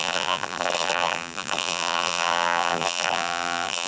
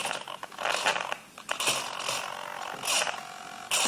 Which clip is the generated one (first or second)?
first